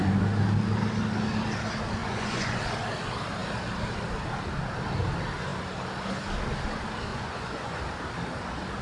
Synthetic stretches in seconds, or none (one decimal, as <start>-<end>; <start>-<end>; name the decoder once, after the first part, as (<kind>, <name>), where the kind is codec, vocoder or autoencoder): 2.0-2.6 (vocoder, Vocos); 7.1-7.8